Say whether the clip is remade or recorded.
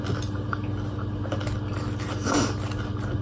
recorded